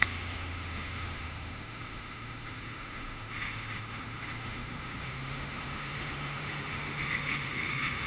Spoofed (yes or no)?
yes